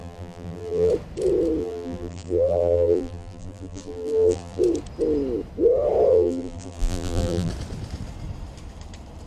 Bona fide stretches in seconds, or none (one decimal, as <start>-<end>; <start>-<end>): 0.9-1.6; 4.6-6.1; 7.5-9.3